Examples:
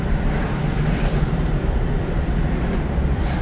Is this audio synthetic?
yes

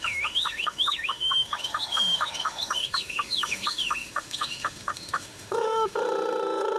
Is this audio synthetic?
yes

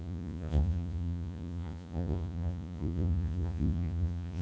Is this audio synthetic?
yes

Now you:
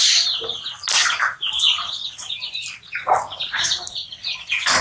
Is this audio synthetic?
no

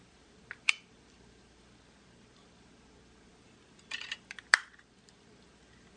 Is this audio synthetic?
yes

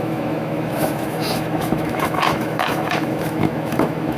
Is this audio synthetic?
yes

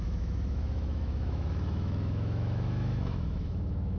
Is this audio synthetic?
yes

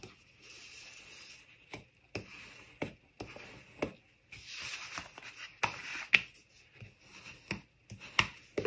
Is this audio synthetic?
no